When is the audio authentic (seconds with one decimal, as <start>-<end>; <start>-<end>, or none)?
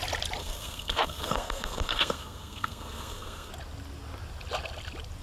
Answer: 0.0-0.4; 3.5-5.2